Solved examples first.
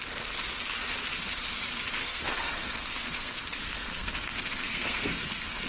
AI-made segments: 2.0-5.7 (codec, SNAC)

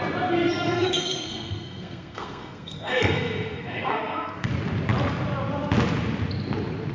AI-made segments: 0.4-4.5 (codec, SNAC)